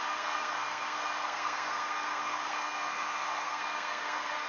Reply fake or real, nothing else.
fake